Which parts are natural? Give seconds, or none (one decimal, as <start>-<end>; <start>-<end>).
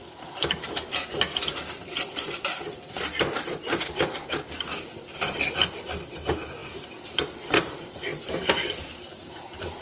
0.0-9.8